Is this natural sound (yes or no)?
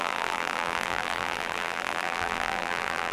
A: no